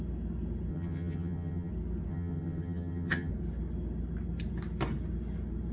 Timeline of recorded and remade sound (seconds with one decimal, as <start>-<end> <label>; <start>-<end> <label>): 0.0-0.7 recorded; 0.7-1.7 remade; 1.7-2.1 recorded; 2.1-3.3 remade; 3.3-5.7 recorded